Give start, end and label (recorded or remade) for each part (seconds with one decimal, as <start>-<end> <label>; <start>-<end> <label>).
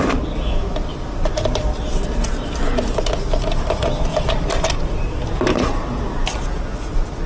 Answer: 0.0-0.9 recorded; 0.9-1.5 remade; 1.5-4.1 recorded; 4.1-4.7 remade; 4.7-7.3 recorded